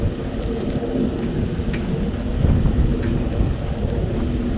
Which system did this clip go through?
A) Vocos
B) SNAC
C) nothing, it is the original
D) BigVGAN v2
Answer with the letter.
C